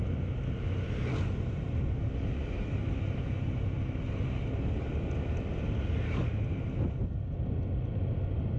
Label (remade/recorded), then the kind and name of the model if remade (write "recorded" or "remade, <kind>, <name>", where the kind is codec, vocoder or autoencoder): recorded